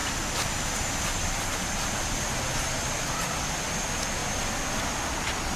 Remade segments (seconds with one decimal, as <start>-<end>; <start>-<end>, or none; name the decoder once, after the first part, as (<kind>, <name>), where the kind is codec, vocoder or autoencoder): 0.0-0.9 (vocoder, BigVGAN v2); 1.5-2.2